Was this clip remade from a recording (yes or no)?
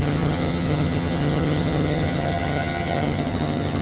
yes